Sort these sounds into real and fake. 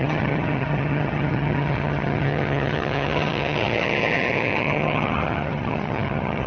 fake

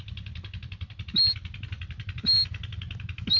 real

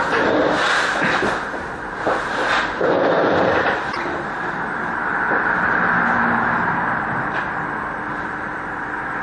fake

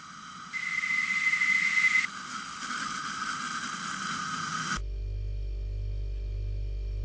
real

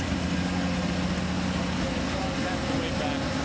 real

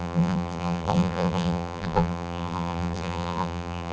fake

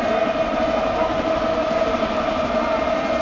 real